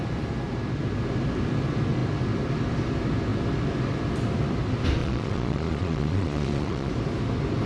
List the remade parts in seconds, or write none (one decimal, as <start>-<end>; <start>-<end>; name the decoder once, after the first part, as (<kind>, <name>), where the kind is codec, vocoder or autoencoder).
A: 5.0-6.9 (vocoder, Vocos)